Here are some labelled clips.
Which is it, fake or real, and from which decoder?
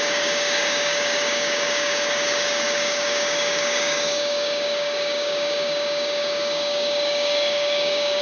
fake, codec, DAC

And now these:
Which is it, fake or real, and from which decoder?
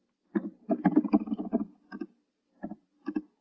real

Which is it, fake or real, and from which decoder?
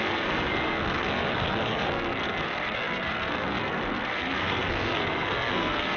fake, codec, SNAC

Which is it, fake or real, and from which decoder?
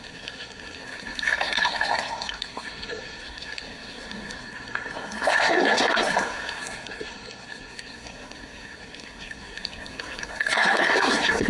fake, codec, SNAC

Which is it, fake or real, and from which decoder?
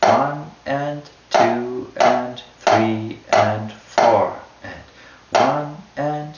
real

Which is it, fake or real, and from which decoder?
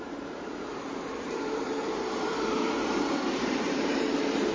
fake, vocoder, BigVGAN v2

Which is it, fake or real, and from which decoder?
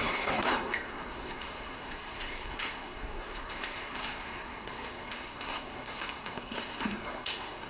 fake, codec, SNAC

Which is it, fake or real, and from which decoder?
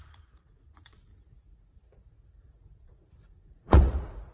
fake, vocoder, Vocos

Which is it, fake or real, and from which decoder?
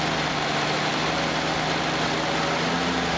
real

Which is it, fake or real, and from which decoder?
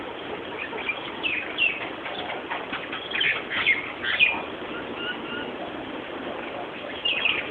real